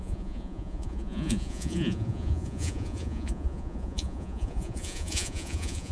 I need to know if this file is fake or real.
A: fake